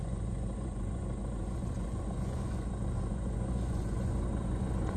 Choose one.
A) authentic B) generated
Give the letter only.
B